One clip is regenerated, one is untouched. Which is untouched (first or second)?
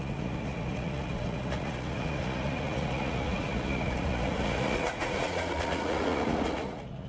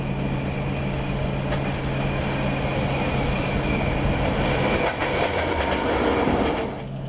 second